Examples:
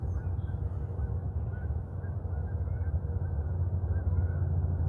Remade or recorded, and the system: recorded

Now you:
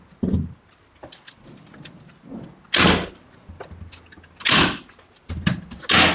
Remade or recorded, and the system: recorded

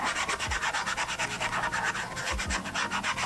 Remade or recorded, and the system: recorded